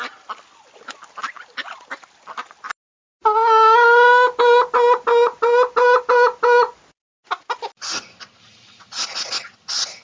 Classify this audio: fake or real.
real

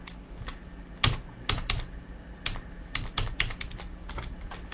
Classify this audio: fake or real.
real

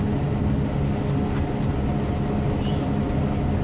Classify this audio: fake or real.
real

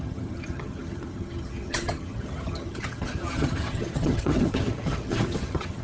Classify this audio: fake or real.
fake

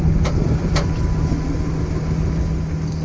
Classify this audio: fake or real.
real